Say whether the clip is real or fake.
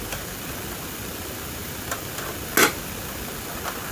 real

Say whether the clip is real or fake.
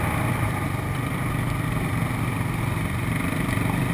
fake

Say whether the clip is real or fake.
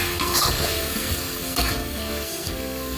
fake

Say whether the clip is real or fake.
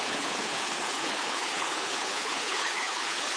fake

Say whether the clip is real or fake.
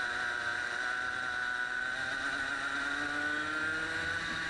real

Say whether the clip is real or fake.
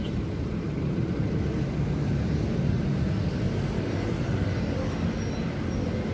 real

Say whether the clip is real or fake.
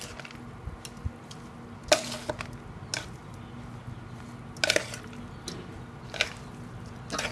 real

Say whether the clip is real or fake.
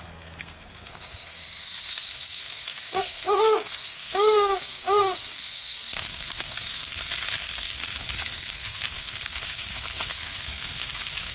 fake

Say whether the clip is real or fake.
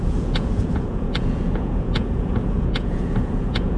fake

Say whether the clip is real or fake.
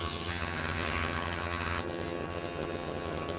fake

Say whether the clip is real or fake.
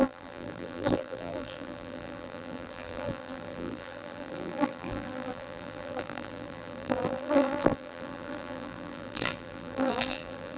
fake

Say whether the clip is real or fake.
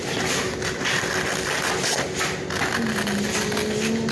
real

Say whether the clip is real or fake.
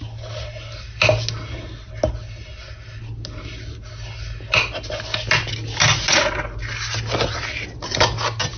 real